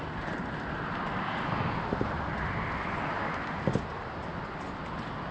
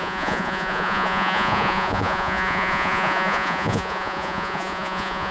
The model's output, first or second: second